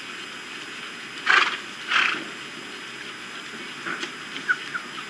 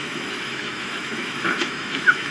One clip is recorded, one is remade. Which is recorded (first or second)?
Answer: first